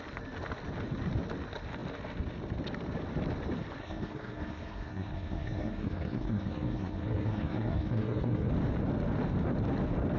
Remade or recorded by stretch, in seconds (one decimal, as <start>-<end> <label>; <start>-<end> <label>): 0.0-3.8 recorded; 3.8-8.5 remade; 8.5-10.2 recorded